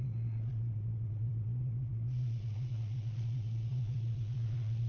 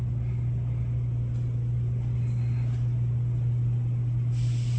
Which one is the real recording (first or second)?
second